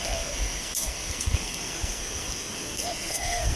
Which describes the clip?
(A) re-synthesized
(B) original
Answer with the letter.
A